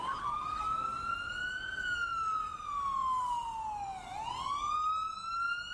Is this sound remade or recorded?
recorded